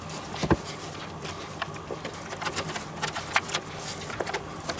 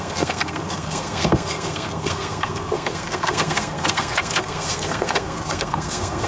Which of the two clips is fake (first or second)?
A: second